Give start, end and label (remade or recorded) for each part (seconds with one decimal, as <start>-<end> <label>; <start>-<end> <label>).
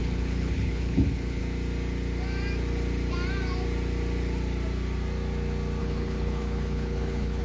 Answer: 0.0-1.4 remade; 1.4-5.8 recorded; 5.8-7.4 remade